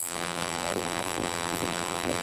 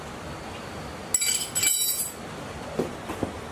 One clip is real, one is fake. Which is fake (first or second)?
first